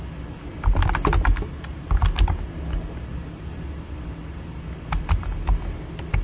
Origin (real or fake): real